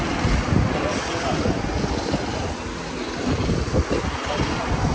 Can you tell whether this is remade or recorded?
recorded